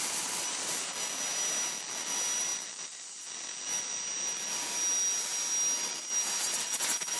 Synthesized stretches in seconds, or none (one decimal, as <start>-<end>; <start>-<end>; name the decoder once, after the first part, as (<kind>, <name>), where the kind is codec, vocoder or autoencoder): none

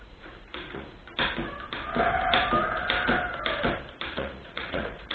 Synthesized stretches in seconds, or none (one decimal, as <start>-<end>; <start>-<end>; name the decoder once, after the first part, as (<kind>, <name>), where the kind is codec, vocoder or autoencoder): 0.0-1.0 (vocoder, Vocos); 4.1-5.1

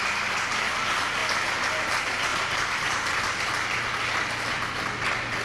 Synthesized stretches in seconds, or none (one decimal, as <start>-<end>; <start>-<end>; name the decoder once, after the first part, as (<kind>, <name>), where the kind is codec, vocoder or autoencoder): 2.3-3.3 (vocoder, BigVGAN v2)

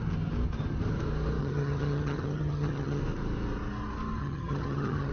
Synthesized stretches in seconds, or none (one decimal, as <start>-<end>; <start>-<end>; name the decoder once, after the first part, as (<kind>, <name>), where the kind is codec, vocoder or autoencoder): 1.4-3.0 (vocoder, HiFi-GAN); 4.2-5.1